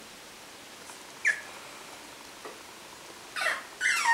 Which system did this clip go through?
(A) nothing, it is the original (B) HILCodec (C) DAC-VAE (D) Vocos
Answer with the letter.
A